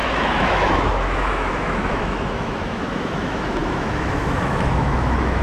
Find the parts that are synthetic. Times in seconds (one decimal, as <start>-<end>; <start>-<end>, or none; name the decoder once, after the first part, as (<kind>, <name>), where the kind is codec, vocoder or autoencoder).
0.0-5.4 (autoencoder, DAC-VAE)